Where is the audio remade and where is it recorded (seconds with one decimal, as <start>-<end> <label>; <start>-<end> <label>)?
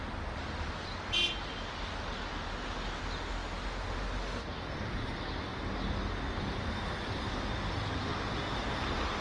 0.0-9.2 recorded